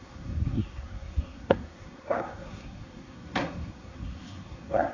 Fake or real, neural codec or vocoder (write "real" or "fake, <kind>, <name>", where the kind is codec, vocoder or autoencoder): fake, codec, SNAC